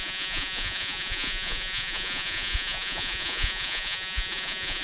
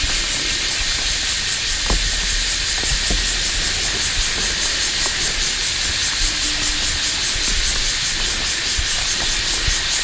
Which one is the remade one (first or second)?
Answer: first